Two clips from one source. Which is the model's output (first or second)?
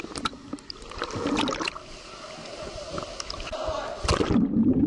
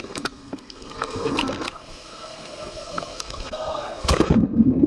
second